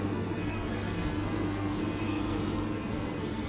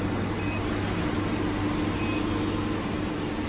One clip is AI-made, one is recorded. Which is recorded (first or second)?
second